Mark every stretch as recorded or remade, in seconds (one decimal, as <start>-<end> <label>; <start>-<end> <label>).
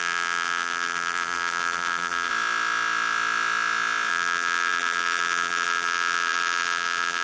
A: 0.0-2.3 remade; 2.3-4.1 recorded; 4.1-7.2 remade